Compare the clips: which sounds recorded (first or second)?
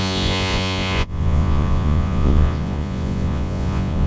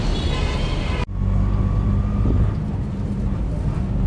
second